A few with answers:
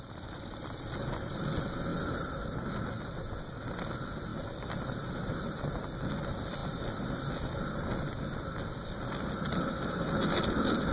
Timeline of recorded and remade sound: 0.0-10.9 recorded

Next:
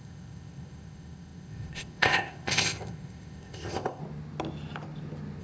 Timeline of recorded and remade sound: 0.0-4.0 remade; 4.0-5.4 recorded

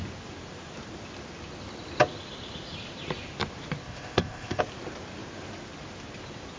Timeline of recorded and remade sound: 0.0-3.8 recorded; 3.8-4.6 remade; 4.6-6.6 recorded

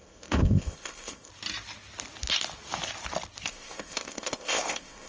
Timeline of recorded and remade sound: 0.0-1.3 remade; 1.3-3.5 recorded; 3.5-5.1 remade

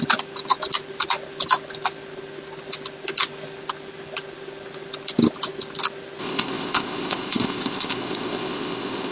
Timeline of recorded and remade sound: 0.0-6.2 recorded; 6.2-9.1 remade

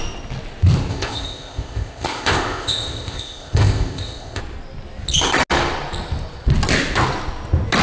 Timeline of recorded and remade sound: 0.0-0.9 recorded; 0.9-4.4 remade; 4.4-7.8 recorded